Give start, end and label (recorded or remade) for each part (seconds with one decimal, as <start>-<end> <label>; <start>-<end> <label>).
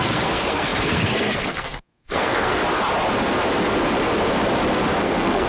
0.0-2.6 remade; 2.6-5.0 recorded; 5.0-5.5 remade